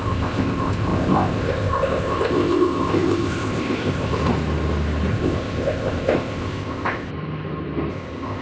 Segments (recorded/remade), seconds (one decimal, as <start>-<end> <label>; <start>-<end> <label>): 0.0-4.2 remade; 4.2-5.1 recorded; 5.1-7.1 remade; 7.1-7.9 recorded; 7.9-8.4 remade